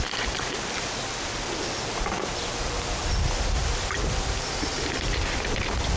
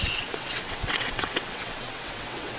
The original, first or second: first